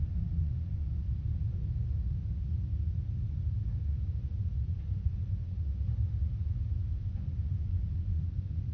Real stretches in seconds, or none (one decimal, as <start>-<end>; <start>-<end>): 0.9-4.4; 5.7-7.1